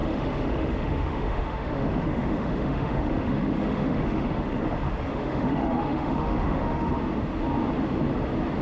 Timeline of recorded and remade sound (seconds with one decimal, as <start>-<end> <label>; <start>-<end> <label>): 0.0-4.6 remade; 4.6-5.1 recorded; 5.1-6.9 remade; 6.9-8.6 recorded